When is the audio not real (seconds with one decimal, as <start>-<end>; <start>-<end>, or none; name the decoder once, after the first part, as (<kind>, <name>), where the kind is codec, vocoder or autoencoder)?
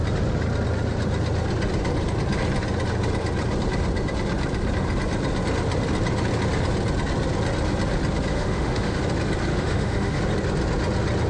8.3-9.0 (autoencoder, DAC-VAE); 9.5-10.2